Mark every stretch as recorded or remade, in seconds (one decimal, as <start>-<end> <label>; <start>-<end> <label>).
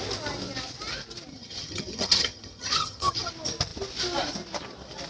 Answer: 0.0-1.3 recorded; 1.3-3.3 remade; 3.3-5.1 recorded